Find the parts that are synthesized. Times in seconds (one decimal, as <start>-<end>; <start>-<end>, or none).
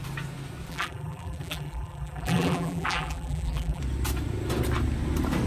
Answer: 0.7-3.8